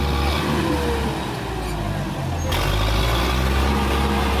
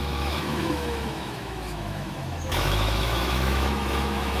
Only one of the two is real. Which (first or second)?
first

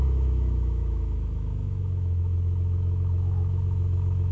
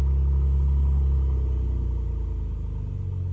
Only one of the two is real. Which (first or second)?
second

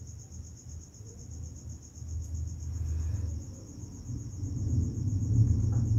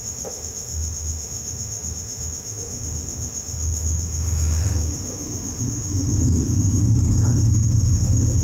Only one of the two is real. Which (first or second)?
first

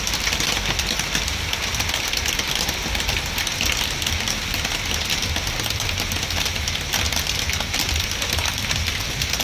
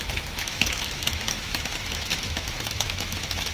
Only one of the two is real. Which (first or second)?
first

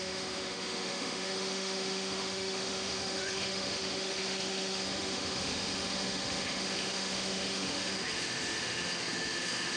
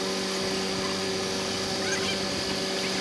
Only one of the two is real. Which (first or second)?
second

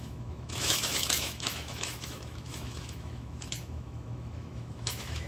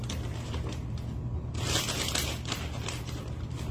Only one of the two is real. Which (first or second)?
second